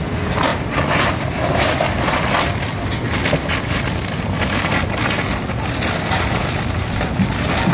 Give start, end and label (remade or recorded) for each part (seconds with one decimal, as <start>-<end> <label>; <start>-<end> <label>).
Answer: 0.0-7.7 recorded